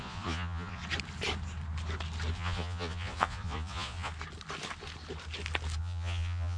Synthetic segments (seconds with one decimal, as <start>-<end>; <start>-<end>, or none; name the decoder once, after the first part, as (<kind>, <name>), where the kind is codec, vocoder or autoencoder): 0.0-0.8 (vocoder, Vocos); 2.3-4.1; 5.8-6.6